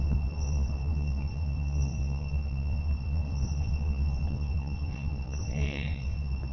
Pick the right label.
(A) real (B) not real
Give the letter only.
B